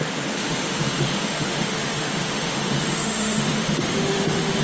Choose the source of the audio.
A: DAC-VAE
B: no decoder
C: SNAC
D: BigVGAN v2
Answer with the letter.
A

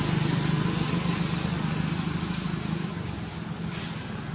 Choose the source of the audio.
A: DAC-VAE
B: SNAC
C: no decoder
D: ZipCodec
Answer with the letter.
C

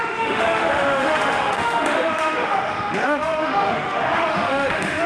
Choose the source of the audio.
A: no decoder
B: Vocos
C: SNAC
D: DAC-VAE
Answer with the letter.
D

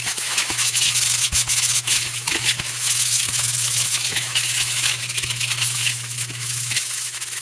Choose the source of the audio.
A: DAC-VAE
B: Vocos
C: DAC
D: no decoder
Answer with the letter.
A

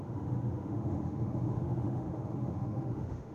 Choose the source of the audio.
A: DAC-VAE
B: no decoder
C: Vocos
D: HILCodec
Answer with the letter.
A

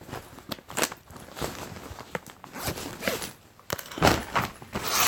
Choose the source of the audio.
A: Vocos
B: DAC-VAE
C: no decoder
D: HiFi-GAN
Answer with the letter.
C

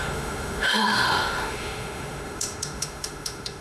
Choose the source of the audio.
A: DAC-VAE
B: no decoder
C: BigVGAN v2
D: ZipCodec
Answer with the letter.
A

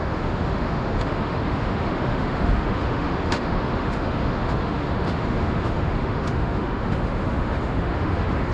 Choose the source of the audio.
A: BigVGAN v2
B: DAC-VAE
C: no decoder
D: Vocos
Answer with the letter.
B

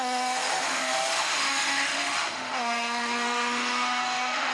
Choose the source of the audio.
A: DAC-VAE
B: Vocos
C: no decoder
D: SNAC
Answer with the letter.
A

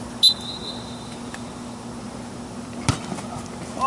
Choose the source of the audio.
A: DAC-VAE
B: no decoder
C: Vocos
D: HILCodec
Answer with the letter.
B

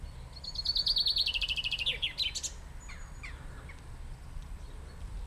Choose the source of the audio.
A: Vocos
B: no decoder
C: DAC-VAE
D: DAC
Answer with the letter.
B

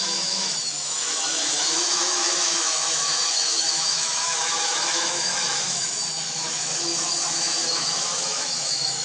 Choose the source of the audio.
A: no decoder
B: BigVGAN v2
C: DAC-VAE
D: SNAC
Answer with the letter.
C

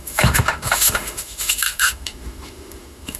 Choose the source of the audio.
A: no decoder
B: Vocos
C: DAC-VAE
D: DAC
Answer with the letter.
C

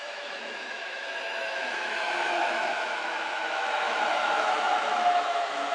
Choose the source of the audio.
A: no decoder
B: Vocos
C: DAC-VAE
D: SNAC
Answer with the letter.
C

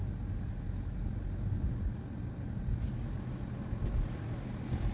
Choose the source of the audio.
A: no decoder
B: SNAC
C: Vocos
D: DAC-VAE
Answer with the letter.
A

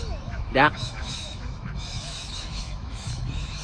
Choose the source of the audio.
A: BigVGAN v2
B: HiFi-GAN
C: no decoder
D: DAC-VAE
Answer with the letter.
D